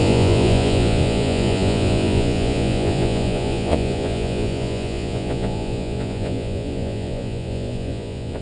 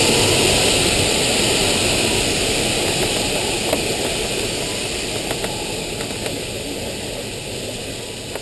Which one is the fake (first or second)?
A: first